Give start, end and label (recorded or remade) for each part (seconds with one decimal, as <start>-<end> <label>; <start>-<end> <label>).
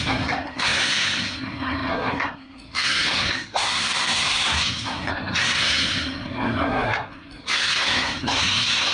0.0-8.9 remade